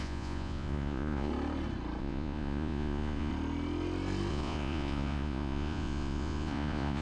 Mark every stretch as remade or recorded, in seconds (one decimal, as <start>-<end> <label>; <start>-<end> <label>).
0.0-1.3 remade; 1.3-2.0 recorded; 2.0-3.3 remade; 3.3-4.3 recorded; 4.3-7.0 remade